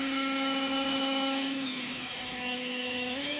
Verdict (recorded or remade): remade